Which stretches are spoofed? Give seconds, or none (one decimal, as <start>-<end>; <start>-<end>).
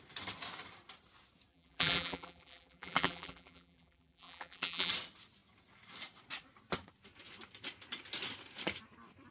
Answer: 1.5-4.9